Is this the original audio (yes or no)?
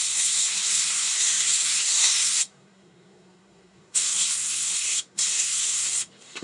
no